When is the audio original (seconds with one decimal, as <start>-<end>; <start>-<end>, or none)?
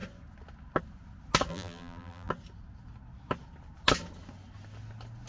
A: 0.0-1.5; 2.3-5.3